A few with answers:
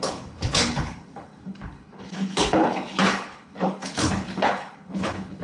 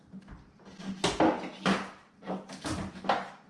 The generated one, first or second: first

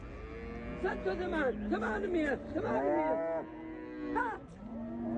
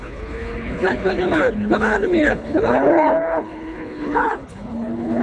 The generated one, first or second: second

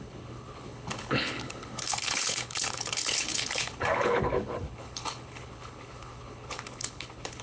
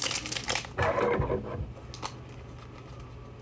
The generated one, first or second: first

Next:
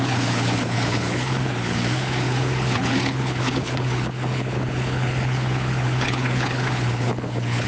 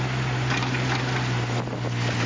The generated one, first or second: first